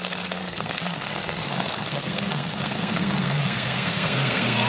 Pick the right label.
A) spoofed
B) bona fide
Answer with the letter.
A